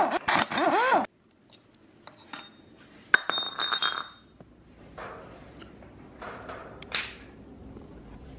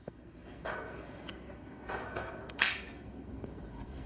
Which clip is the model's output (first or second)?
second